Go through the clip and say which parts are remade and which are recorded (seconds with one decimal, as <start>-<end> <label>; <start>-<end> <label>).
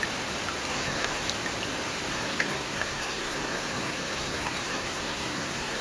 0.0-0.7 recorded; 0.7-1.3 remade; 1.3-2.1 recorded; 2.1-5.8 remade